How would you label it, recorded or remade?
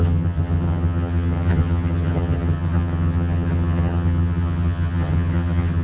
remade